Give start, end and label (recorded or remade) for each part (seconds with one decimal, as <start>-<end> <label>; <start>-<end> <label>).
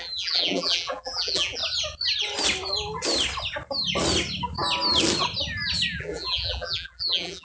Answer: 0.0-1.6 remade; 1.6-6.0 recorded; 6.0-7.4 remade